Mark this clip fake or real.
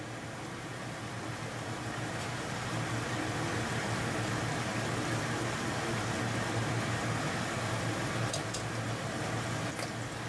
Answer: real